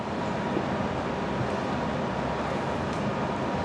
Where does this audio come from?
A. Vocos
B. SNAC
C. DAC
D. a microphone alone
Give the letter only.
D